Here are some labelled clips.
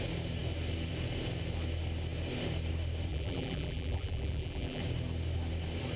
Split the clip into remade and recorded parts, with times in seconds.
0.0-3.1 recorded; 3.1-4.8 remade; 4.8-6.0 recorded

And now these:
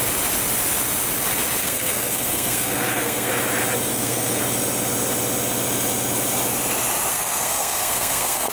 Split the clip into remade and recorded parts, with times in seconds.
0.0-1.6 recorded; 1.6-3.3 remade; 3.3-3.9 recorded; 3.9-4.4 remade; 4.4-7.1 recorded; 7.1-8.5 remade

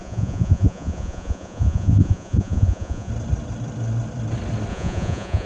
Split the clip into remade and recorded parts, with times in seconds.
0.0-3.1 remade; 3.1-4.7 recorded; 4.7-5.5 remade

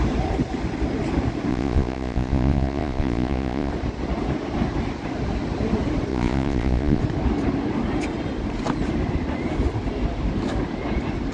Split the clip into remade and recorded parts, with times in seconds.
0.0-1.5 recorded; 1.5-3.7 remade; 3.7-6.1 recorded; 6.1-7.0 remade; 7.0-11.3 recorded

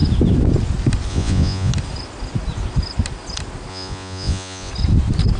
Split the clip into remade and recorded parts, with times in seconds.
0.0-1.1 recorded; 1.1-1.7 remade; 1.7-3.7 recorded; 3.7-4.7 remade; 4.7-5.4 recorded

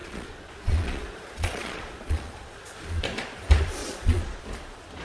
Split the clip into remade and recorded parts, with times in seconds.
0.0-3.0 remade; 3.0-3.8 recorded; 3.8-4.4 remade; 4.4-5.0 recorded

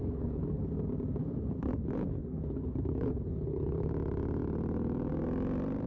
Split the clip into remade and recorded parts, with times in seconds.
0.0-0.7 remade; 0.7-1.2 recorded; 1.2-3.9 remade; 3.9-5.9 recorded